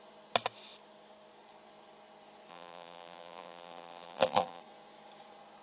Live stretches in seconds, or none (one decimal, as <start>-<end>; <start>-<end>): 0.0-2.5; 4.6-5.6